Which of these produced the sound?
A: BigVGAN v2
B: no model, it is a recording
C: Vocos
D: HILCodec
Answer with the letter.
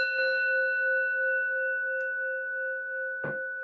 B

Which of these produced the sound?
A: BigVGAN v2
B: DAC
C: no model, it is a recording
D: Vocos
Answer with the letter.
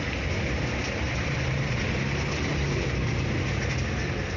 C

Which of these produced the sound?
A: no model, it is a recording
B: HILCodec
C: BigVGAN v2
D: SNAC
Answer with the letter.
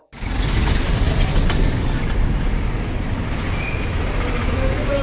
A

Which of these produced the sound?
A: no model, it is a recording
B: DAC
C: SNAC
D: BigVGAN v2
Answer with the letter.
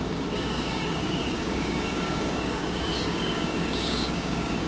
B